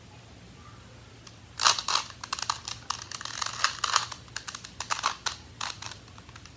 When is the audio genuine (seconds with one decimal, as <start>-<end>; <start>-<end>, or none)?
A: 0.0-6.6

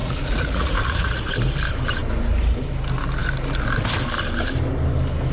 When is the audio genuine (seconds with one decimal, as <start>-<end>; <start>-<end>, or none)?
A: 1.3-5.3